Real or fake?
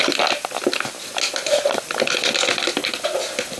real